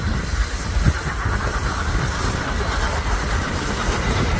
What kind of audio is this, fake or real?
real